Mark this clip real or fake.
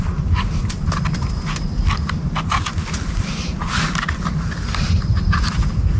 real